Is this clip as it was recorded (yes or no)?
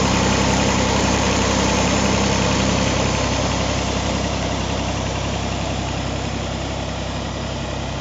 no